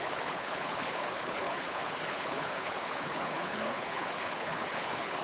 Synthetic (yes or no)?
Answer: yes